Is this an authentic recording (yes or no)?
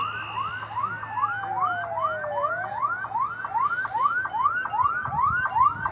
yes